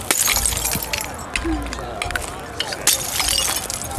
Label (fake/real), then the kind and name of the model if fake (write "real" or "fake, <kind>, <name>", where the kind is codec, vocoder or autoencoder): real